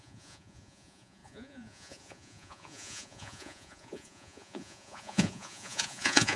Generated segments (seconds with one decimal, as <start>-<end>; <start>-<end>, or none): 0.0-6.4